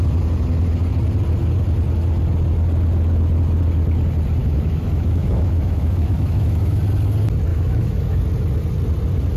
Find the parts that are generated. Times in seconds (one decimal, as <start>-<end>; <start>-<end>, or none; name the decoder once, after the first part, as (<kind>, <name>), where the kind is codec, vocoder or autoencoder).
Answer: 4.4-6.8 (autoencoder, DAC-VAE); 7.5-8.2